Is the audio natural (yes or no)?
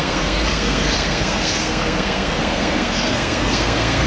no